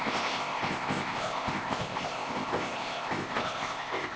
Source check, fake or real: fake